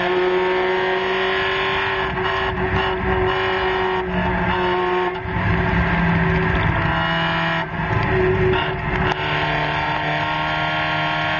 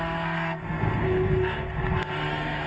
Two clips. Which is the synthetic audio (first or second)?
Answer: second